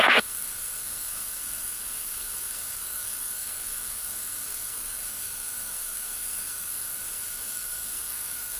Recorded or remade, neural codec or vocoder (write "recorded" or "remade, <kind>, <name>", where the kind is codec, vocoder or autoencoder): remade, codec, SNAC